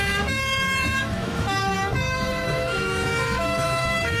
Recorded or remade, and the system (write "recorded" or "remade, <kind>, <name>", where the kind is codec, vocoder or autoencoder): remade, autoencoder, DAC-VAE